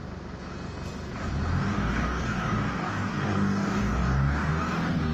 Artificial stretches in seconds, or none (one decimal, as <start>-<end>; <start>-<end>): 1.7-5.1